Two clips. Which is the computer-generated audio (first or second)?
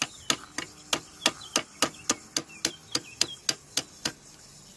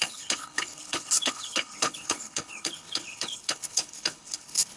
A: second